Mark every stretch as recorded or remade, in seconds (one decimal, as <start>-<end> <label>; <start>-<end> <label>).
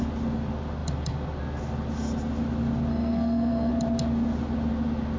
0.0-2.9 recorded; 2.9-3.7 remade; 3.7-5.2 recorded